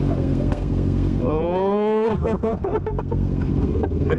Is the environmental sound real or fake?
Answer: fake